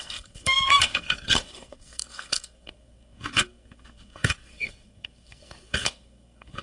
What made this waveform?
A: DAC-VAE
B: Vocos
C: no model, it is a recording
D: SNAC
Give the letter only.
D